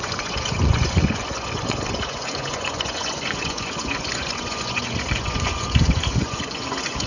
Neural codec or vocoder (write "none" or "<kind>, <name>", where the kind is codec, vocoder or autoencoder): vocoder, Vocos